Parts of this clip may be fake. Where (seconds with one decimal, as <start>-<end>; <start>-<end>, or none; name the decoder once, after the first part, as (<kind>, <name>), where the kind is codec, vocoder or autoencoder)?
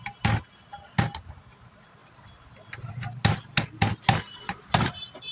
none